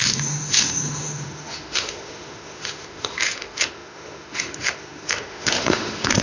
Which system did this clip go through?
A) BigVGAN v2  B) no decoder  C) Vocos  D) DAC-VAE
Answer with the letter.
D